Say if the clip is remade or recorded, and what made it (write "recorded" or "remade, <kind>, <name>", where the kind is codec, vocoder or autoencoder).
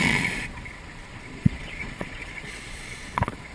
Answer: remade, vocoder, Vocos